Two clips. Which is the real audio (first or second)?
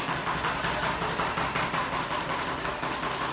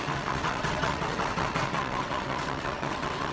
first